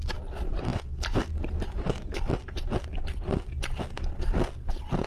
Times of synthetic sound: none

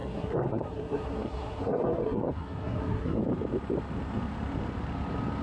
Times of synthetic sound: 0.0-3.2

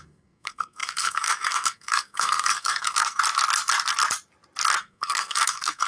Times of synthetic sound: 0.0-3.2; 4.8-5.9

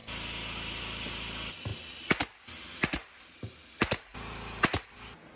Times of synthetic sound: none